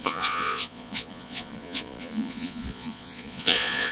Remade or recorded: remade